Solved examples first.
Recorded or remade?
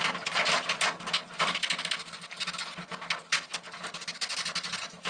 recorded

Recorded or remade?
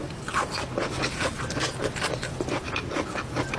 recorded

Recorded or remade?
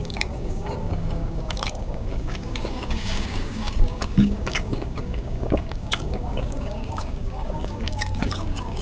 remade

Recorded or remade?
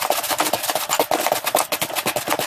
recorded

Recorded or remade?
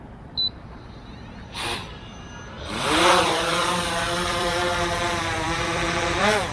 remade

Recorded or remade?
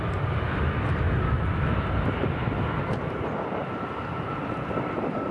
recorded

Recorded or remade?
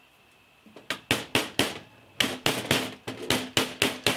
recorded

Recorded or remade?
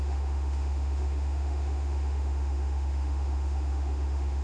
remade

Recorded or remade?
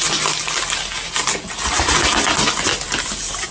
recorded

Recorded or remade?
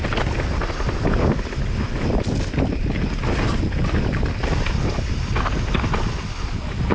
recorded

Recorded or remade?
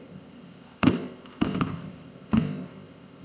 remade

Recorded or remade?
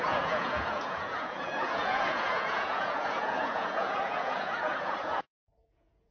remade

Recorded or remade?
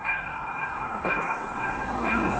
remade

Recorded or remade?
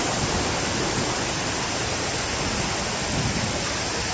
recorded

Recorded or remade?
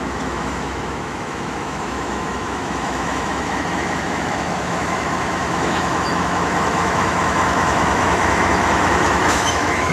remade